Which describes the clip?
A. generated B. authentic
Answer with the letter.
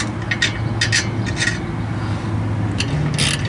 B